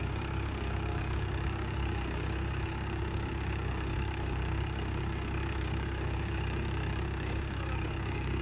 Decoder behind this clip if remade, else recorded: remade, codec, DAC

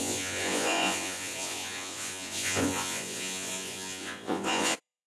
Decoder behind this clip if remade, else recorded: remade, vocoder, Vocos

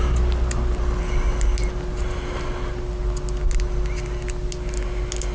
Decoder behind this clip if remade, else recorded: recorded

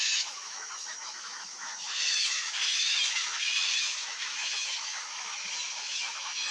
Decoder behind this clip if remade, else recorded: remade, autoencoder, DAC-VAE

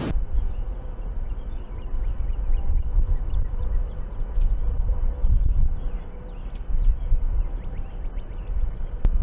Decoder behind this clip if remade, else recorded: recorded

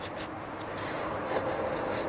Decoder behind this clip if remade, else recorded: recorded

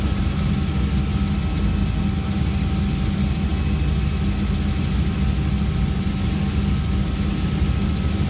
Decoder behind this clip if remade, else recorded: recorded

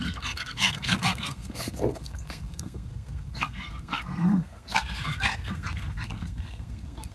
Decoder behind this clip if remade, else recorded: remade, codec, SNAC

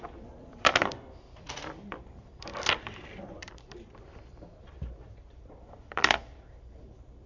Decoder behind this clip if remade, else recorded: remade, vocoder, BigVGAN v2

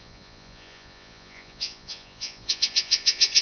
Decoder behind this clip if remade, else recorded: remade, vocoder, Vocos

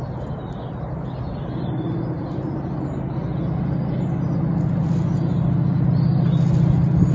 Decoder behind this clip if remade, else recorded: recorded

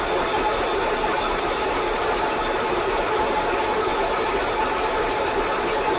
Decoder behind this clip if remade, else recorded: recorded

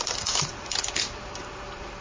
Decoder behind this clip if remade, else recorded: remade, vocoder, BigVGAN v2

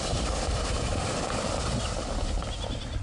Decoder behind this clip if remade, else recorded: recorded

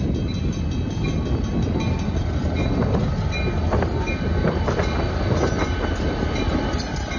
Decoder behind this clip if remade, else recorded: recorded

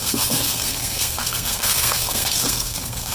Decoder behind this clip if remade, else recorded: remade, codec, SNAC